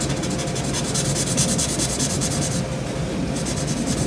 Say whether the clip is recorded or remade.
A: recorded